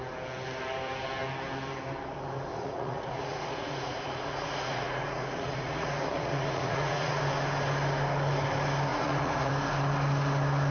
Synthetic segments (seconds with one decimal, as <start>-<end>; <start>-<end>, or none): 2.5-7.2; 8.9-9.5